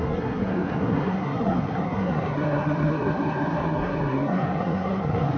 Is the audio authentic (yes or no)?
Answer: no